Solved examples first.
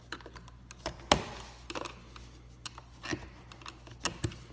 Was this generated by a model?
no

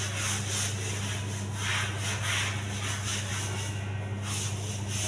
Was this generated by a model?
no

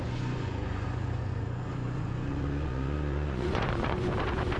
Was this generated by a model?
yes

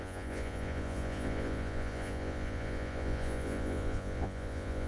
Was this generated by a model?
yes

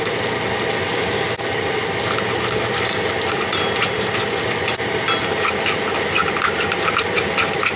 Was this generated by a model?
no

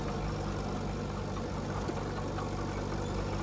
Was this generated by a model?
no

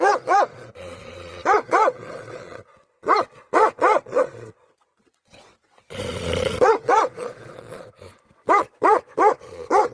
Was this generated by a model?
yes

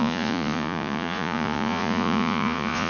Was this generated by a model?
yes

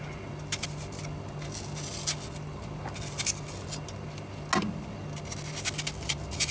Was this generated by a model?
no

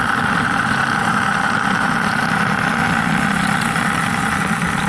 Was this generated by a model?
no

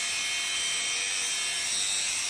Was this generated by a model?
no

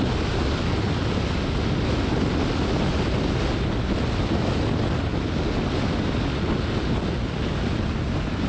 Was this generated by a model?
no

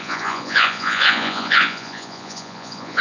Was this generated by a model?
yes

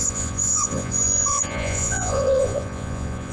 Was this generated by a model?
yes